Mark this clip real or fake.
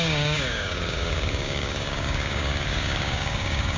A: fake